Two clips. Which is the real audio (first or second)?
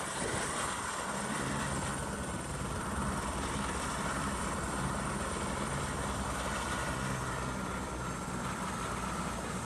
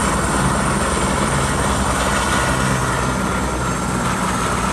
second